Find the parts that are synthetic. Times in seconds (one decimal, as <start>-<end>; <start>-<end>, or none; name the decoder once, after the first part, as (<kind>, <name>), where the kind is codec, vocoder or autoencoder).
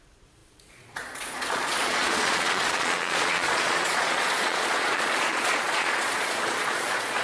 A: 0.0-7.2 (vocoder, Vocos)